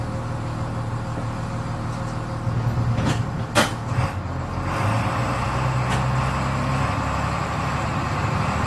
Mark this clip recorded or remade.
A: recorded